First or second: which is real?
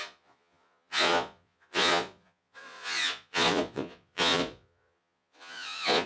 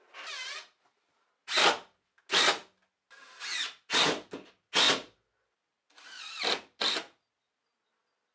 second